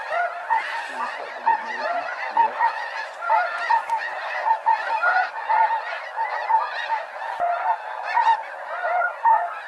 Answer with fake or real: fake